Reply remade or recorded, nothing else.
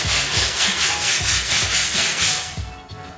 remade